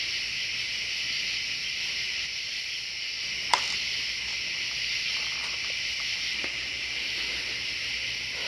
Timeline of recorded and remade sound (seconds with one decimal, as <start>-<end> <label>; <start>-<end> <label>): 0.0-1.6 recorded; 1.6-3.2 remade; 3.2-8.5 recorded